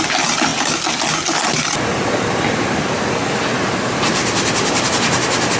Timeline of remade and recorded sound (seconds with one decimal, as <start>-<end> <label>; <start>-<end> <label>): 0.0-0.5 recorded; 0.5-1.0 remade; 1.0-4.2 recorded; 4.2-4.9 remade; 4.9-5.6 recorded